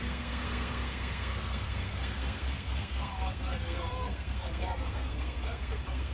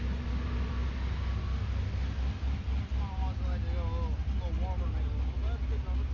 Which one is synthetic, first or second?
first